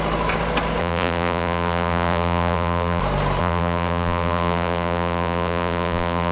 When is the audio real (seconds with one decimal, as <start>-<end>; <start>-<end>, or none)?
0.0-0.8; 3.0-3.4